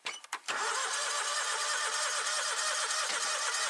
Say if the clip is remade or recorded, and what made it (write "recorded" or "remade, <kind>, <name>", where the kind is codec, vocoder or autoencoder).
remade, vocoder, BigVGAN v2